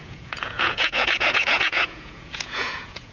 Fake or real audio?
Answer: fake